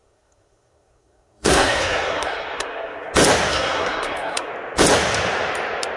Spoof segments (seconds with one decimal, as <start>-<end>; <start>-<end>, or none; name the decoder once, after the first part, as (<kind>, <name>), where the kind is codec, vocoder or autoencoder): 0.0-3.1 (codec, SNAC); 3.5-4.5